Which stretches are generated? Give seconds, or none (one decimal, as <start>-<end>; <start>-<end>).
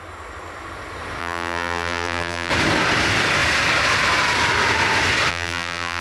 1.2-2.5; 5.3-6.0